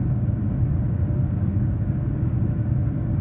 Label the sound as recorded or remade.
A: remade